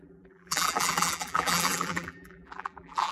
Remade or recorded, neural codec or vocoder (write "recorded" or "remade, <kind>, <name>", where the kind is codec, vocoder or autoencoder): remade, vocoder, BigVGAN v2